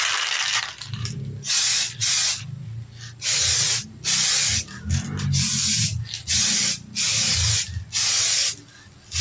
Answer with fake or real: real